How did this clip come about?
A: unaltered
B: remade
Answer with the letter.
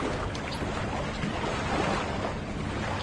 A